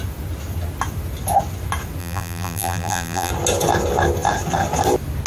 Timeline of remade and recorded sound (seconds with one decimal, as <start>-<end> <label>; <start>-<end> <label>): 0.0-2.0 recorded; 2.0-3.3 remade; 3.3-5.3 recorded